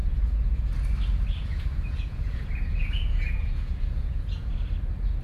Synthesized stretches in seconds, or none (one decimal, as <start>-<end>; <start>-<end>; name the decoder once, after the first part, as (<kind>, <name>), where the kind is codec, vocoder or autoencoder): 0.0-0.7 (vocoder, Vocos); 1.4-4.5